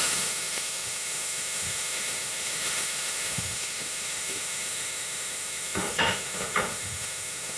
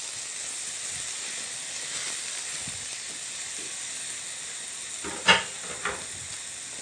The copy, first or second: first